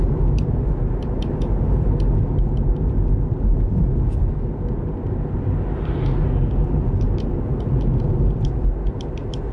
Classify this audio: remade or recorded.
recorded